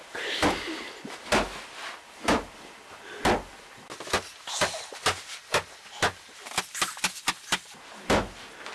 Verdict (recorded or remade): recorded